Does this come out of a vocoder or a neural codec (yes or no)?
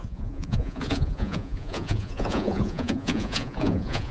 yes